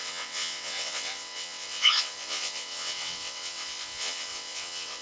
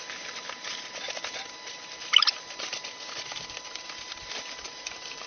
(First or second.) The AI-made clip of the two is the first